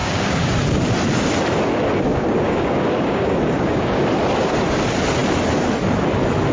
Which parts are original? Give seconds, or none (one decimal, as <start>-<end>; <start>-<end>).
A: 0.5-2.1; 4.0-6.5